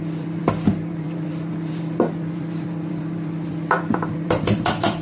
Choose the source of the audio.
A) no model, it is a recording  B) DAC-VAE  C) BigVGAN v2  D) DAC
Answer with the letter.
C